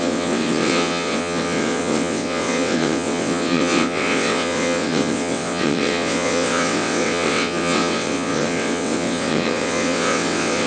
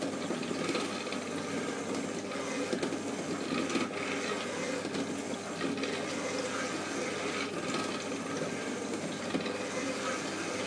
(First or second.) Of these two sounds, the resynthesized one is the first